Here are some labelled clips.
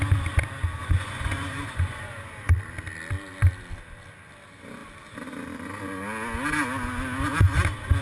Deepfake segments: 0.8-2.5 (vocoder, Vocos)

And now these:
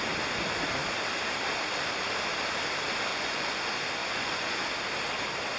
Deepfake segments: 3.1-3.6 (vocoder, Vocos); 4.0-4.6

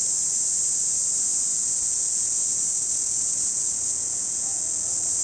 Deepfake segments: 1.5-4.6 (vocoder, Vocos)

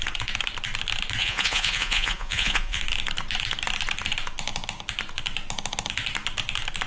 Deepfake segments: 1.2-2.8 (vocoder, Vocos)

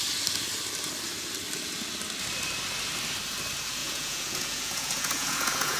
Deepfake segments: 3.8-5.8 (vocoder, Vocos)

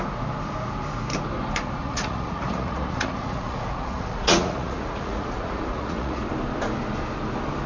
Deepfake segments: 1.8-6.2 (vocoder, Vocos)